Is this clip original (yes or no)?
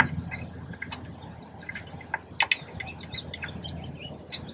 yes